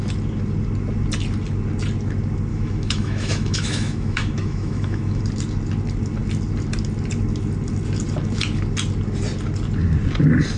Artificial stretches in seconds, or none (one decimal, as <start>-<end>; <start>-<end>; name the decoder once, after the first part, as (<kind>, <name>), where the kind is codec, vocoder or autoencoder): 2.5-5.2 (autoencoder, DAC-VAE)